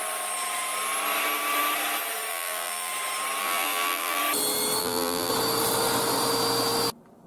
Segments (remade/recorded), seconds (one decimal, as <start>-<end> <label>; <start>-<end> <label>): 0.0-2.3 recorded; 2.3-2.9 remade; 2.9-3.4 recorded; 3.4-4.2 remade; 4.2-4.8 recorded; 4.8-5.3 remade; 5.3-7.3 recorded